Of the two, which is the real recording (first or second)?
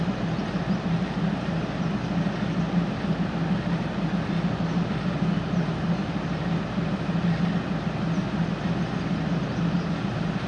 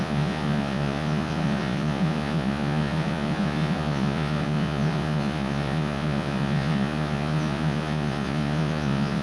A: first